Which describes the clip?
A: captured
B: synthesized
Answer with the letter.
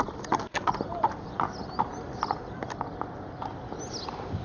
A